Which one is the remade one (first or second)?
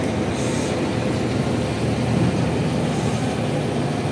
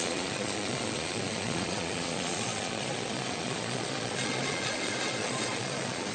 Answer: second